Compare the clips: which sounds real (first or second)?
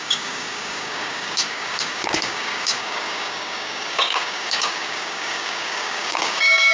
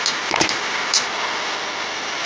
second